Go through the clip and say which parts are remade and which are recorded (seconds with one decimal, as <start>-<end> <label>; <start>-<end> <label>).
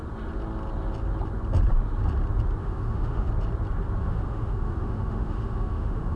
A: 0.0-2.6 recorded; 2.6-3.3 remade; 3.3-4.0 recorded; 4.0-6.2 remade